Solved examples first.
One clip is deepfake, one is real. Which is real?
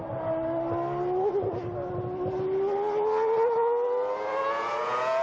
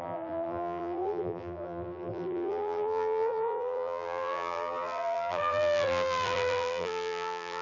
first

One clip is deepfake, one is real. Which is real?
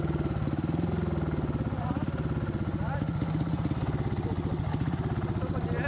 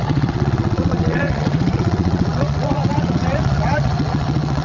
first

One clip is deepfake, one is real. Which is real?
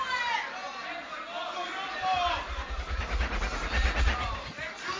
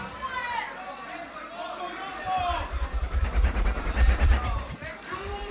first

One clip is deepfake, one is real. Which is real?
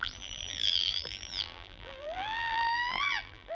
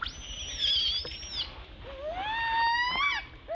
second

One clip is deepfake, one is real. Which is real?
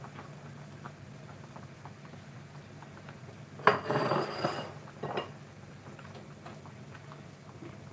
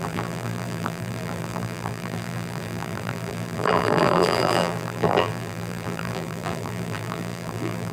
first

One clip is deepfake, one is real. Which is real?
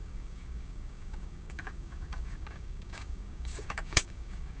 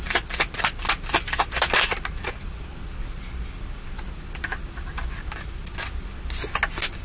second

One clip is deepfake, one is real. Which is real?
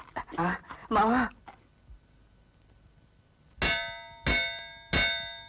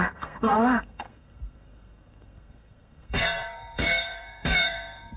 first